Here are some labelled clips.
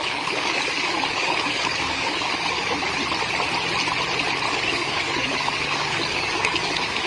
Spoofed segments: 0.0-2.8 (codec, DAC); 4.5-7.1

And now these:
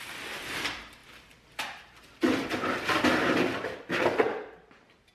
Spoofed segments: none

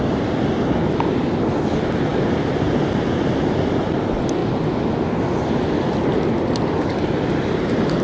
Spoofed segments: none

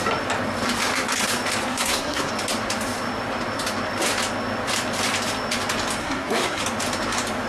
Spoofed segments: 1.7-2.3 (codec, SNAC); 6.0-6.6